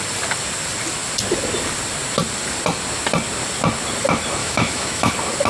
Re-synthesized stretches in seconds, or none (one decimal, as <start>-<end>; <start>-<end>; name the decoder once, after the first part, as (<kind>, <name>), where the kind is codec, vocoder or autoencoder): 4.4-5.1 (autoencoder, DAC-VAE)